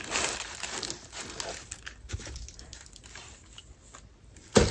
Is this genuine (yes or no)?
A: yes